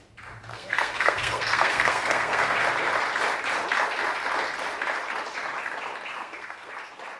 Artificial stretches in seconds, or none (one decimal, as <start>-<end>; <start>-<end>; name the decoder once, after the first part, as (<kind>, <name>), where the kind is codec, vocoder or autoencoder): 0.5-2.6 (codec, SNAC); 6.2-6.7